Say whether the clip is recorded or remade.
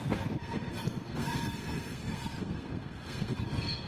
remade